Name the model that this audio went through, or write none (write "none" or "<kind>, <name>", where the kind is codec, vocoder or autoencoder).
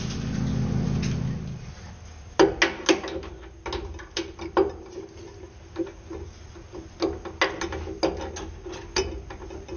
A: none